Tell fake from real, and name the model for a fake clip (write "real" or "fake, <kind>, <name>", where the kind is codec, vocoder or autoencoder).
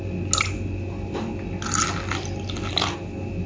real